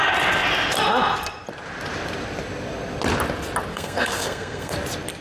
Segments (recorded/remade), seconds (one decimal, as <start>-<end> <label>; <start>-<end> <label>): 0.0-3.7 recorded; 3.7-4.7 remade; 4.7-5.2 recorded